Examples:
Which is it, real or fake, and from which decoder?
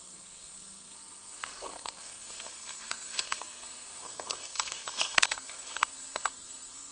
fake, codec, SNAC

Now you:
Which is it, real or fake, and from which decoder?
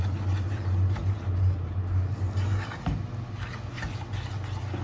real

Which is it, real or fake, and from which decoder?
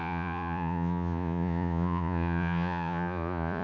fake, vocoder, Vocos